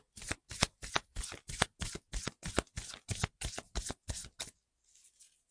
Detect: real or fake real